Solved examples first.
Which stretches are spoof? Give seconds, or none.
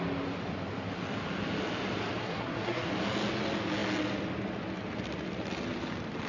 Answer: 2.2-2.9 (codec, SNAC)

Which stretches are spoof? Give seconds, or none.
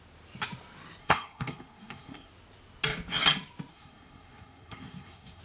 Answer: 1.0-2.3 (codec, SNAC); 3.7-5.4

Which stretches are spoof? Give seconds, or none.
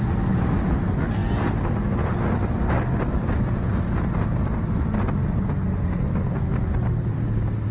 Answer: none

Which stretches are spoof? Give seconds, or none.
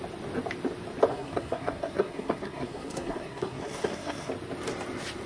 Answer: 1.1-4.3 (codec, SNAC)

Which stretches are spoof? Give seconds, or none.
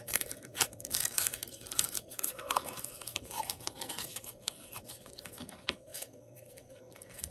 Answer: 0.0-7.3 (codec, SNAC)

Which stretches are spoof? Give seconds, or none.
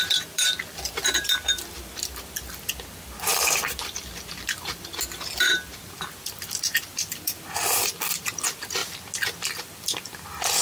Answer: 0.0-8.8 (vocoder, BigVGAN v2); 9.6-10.6